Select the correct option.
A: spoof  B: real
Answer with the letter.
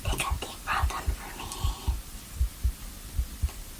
A